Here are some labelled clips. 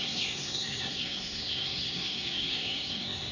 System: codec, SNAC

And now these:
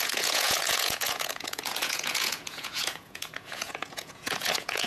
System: vocoder, Vocos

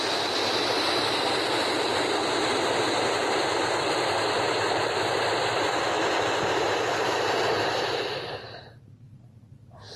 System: vocoder, BigVGAN v2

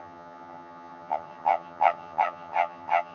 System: vocoder, HiFi-GAN